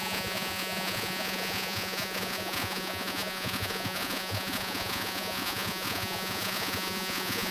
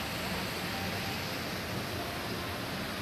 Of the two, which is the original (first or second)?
second